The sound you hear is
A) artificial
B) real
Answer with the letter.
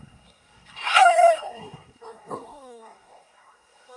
A